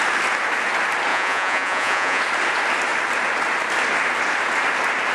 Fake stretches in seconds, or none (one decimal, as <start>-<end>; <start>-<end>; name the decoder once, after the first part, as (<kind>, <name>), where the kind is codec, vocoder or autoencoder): 1.1-2.2 (vocoder, Vocos)